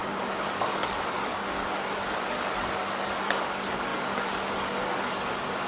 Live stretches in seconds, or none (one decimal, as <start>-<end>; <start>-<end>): none